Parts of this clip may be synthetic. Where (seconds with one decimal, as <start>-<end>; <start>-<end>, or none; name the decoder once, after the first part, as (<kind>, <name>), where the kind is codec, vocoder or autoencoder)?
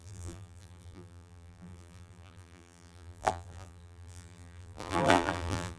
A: 0.0-5.8 (vocoder, BigVGAN v2)